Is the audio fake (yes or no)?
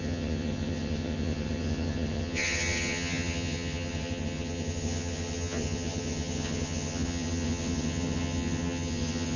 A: yes